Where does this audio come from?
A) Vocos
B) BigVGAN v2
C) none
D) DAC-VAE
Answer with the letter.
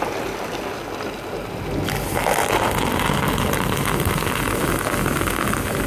C